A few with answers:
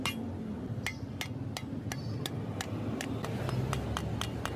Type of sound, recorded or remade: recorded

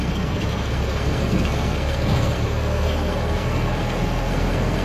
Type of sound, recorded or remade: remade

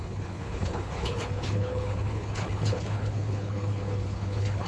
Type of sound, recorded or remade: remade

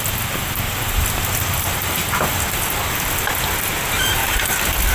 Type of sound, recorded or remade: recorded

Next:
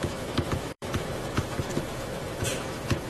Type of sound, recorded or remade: remade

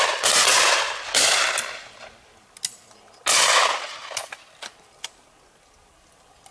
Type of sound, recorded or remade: recorded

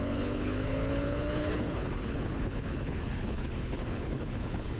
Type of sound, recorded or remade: remade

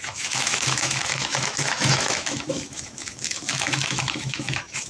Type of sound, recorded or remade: remade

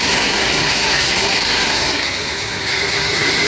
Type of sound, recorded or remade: remade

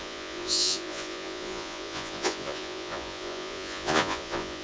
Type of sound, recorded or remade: remade